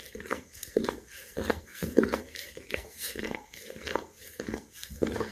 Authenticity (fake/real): fake